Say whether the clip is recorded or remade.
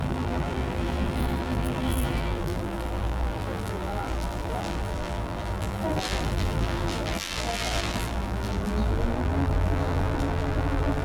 remade